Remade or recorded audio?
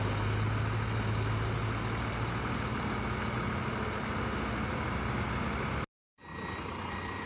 recorded